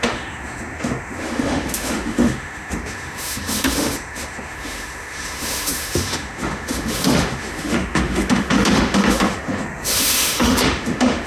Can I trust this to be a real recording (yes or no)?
no